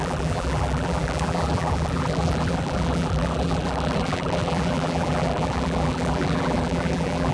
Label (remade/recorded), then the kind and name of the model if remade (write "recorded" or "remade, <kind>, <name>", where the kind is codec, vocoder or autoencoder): remade, vocoder, BigVGAN v2